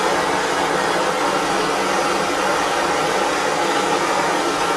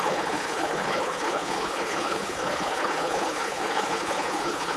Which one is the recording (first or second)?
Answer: first